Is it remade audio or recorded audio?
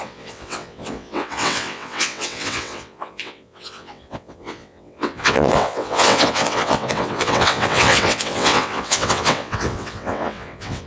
remade